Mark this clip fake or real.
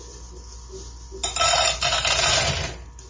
real